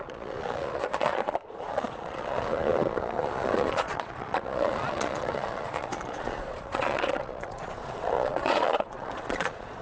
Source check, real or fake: fake